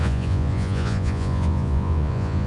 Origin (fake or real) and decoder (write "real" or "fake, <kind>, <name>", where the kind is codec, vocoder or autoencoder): fake, vocoder, Vocos